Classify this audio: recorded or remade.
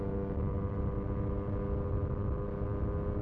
recorded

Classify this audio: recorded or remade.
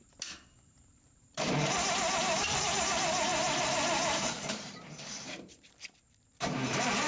remade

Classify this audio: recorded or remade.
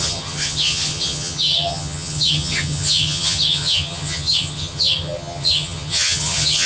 remade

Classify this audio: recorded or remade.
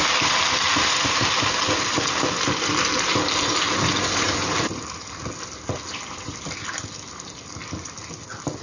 recorded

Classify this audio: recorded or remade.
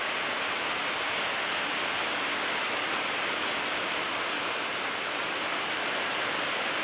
recorded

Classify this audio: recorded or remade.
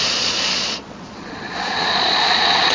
remade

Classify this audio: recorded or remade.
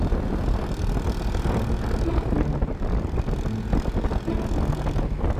recorded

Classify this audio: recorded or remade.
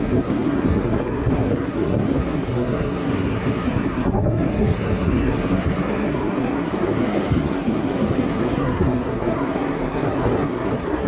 remade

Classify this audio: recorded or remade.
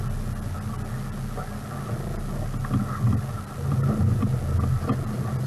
recorded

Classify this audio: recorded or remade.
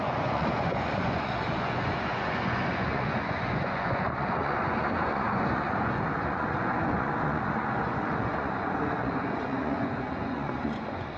remade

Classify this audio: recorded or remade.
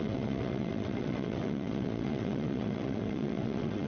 remade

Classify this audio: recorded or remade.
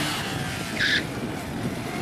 recorded